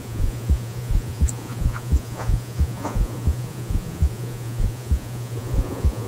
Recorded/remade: remade